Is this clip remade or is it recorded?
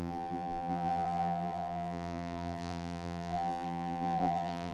remade